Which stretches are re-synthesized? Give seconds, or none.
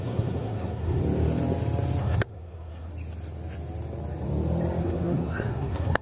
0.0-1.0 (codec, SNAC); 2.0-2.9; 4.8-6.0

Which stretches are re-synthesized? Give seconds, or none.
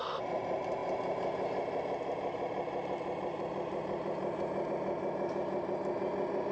none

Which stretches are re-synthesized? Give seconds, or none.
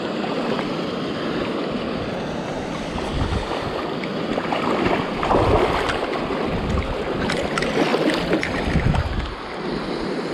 4.1-4.7 (vocoder, BigVGAN v2)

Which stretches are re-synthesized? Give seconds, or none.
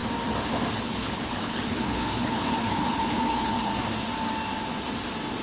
0.8-3.7 (codec, HILCodec)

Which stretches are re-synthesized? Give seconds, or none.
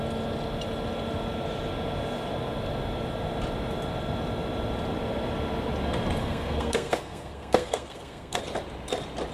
6.2-8.4 (codec, SNAC)